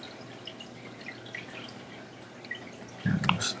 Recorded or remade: recorded